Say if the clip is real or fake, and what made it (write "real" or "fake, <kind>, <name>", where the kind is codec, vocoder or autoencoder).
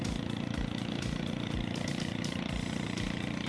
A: fake, vocoder, BigVGAN v2